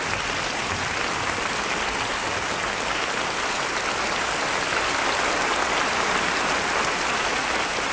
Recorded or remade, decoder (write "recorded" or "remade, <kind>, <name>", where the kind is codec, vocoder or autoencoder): recorded